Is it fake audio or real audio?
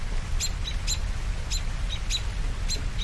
real